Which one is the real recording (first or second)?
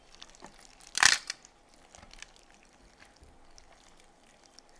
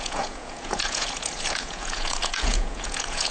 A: first